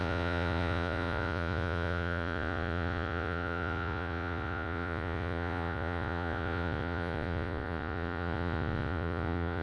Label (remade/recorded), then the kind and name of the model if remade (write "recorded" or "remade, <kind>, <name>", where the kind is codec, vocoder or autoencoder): remade, vocoder, Vocos